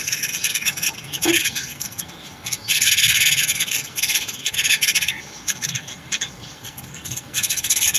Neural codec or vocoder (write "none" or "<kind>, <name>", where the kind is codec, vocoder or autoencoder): codec, SNAC